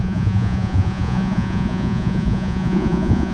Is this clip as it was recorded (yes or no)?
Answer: no